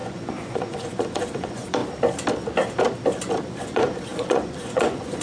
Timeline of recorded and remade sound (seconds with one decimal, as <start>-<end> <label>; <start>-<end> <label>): 0.0-1.8 remade; 1.8-3.6 recorded; 3.6-5.2 remade